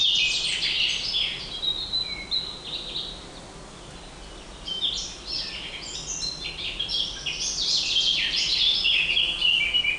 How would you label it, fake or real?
real